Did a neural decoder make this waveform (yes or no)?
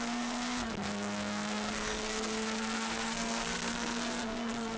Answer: yes